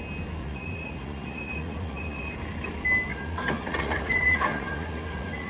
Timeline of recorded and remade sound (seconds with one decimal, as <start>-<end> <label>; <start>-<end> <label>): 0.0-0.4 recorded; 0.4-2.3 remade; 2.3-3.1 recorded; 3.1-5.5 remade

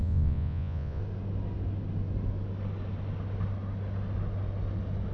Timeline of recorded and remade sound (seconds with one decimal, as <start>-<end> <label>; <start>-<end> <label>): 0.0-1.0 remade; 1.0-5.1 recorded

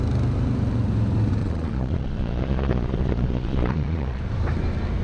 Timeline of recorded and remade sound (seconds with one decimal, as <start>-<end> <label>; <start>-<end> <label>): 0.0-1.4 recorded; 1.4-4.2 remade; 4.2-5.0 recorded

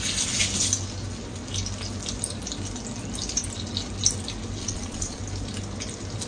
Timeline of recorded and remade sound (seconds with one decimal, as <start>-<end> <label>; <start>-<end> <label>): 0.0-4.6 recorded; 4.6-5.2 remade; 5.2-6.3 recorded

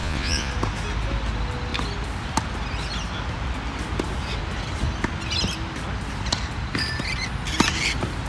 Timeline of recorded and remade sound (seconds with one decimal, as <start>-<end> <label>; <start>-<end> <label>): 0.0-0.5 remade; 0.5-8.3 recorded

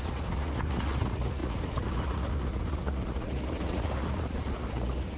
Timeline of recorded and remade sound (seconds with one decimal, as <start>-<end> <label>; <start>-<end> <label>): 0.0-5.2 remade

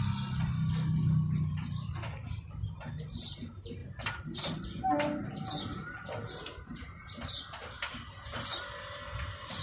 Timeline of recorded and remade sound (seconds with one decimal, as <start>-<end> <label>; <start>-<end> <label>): 0.0-9.6 recorded